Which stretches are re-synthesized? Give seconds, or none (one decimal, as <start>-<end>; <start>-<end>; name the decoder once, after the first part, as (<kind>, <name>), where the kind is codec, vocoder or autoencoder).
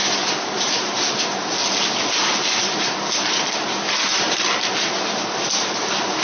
0.0-1.1 (vocoder, BigVGAN v2)